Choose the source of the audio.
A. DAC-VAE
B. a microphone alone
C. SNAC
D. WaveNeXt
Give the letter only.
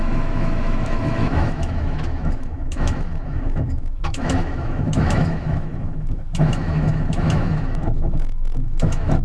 A